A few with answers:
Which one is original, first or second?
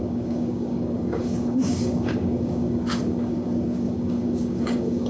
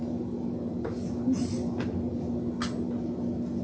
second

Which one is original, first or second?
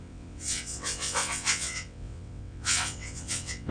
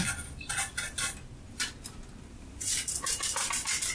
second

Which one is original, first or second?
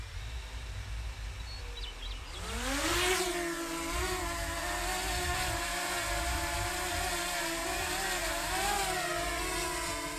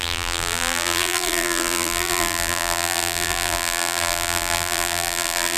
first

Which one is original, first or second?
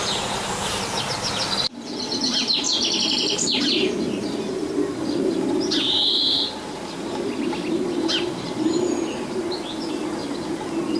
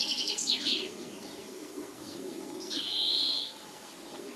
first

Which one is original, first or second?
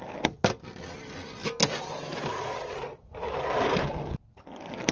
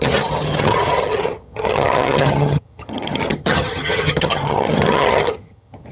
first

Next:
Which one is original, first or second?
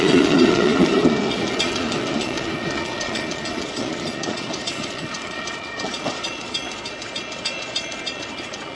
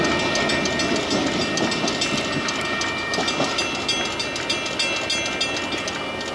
second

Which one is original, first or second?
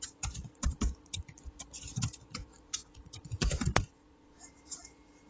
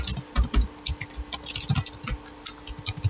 second